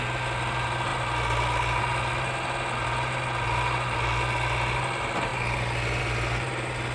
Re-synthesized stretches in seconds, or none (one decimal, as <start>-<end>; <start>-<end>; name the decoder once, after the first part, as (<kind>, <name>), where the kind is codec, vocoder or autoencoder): none